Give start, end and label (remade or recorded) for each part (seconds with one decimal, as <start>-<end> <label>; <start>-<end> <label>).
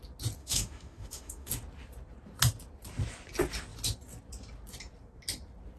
0.0-0.4 recorded; 0.4-1.5 remade; 1.5-5.8 recorded